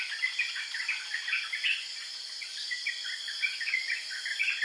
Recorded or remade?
recorded